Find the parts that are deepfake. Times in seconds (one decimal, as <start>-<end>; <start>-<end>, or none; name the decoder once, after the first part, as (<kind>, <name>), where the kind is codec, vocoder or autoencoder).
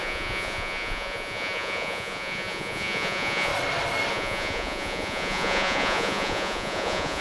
0.0-3.5 (vocoder, Vocos); 4.1-7.2